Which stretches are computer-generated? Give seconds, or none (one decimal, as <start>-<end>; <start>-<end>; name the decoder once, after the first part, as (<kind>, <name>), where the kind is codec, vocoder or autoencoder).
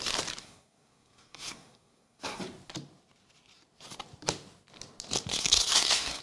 0.4-2.4 (codec, SNAC); 5.3-6.2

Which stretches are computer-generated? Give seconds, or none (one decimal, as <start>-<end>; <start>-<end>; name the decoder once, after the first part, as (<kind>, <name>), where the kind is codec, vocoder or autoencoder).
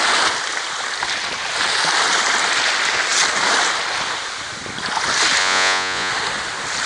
5.4-6.1 (vocoder, Vocos)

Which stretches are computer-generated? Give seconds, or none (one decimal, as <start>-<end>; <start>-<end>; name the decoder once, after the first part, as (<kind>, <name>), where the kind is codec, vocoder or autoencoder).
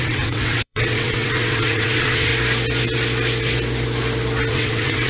0.0-2.3 (vocoder, WaveNeXt); 4.5-5.1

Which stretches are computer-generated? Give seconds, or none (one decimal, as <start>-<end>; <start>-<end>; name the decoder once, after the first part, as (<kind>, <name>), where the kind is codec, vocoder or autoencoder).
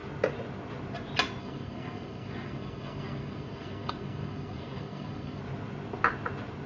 1.4-5.4 (codec, SNAC)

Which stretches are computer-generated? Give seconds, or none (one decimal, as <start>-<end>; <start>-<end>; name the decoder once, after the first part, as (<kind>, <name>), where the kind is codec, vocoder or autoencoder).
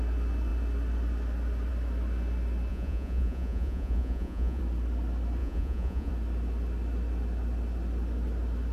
2.7-4.6 (vocoder, Vocos); 5.4-6.1